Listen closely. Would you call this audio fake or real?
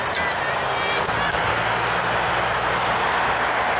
real